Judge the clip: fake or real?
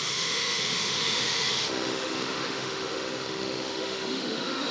fake